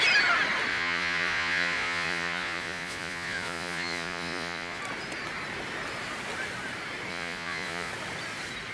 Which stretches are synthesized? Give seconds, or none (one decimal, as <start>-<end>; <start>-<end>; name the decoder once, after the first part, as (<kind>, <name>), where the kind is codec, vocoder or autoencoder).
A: 0.7-4.8 (vocoder, Vocos); 7.1-7.9